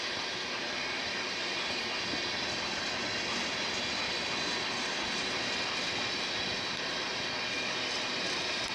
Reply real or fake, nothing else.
real